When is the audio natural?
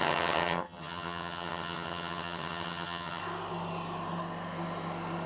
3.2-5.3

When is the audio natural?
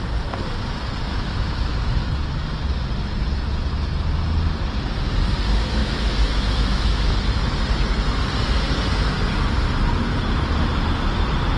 0.0-1.1; 2.1-5.8; 7.1-11.6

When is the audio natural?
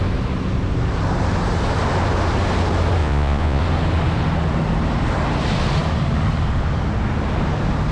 0.0-3.0; 3.6-7.9